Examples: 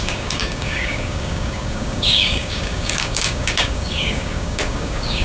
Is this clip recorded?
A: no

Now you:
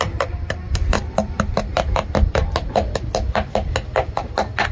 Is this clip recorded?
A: yes